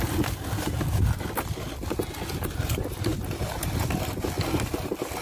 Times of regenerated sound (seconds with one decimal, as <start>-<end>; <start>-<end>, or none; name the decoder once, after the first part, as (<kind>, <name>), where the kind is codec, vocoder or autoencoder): none